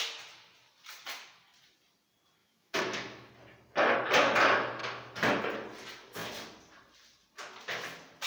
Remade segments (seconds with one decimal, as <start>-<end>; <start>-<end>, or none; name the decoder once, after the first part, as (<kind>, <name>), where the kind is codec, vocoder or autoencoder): 2.4-3.3 (autoencoder, DAC-VAE)